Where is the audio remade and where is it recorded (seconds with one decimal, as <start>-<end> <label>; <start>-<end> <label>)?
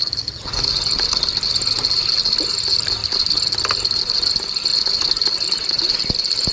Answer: 0.0-6.5 recorded